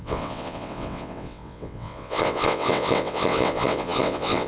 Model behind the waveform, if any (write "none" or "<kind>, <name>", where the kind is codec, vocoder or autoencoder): vocoder, WaveNeXt